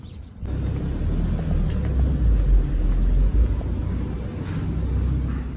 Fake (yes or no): no